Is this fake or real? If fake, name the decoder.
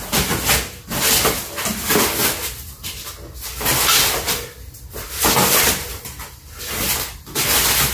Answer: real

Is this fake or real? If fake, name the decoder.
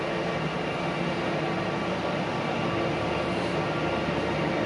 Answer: real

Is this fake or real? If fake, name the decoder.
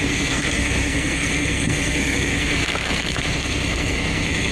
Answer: fake, codec, SNAC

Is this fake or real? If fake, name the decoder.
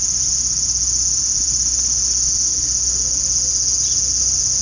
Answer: real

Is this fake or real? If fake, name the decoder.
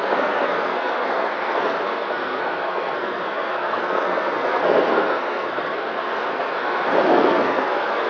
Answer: fake, codec, SNAC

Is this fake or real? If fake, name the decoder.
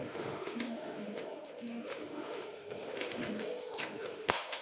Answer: fake, autoencoder, DAC-VAE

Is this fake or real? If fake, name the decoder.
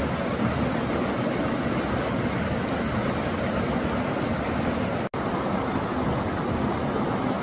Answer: real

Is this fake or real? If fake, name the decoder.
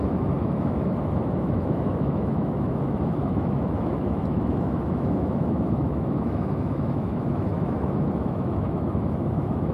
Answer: fake, autoencoder, DAC-VAE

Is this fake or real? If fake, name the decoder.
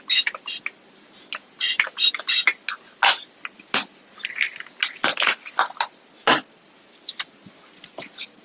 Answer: real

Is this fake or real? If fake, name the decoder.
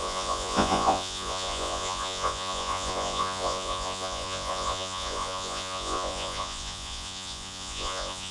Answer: fake, vocoder, Vocos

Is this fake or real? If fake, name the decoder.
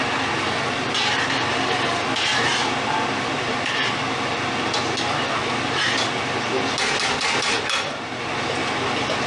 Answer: real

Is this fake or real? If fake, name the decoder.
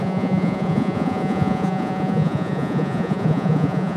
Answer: fake, vocoder, Vocos